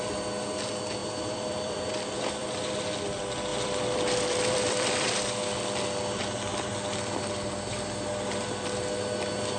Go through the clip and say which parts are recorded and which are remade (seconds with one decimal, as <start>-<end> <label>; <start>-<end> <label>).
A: 0.0-1.0 recorded; 1.0-2.7 remade; 2.7-3.5 recorded; 3.5-5.2 remade; 5.2-9.6 recorded